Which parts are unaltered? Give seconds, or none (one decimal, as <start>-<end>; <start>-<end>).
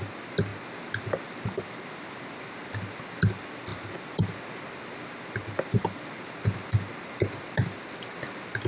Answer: 0.0-8.7